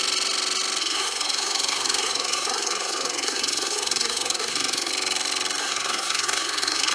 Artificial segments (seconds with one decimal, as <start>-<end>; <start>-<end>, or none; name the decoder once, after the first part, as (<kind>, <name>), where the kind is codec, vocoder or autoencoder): 0.8-4.9 (codec, SNAC); 5.6-6.9